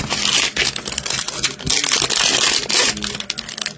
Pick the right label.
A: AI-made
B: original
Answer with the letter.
B